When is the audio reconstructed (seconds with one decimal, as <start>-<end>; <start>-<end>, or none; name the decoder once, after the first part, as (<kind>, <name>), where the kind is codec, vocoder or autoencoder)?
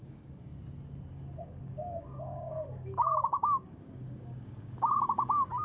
0.0-0.5 (codec, DAC); 1.1-5.6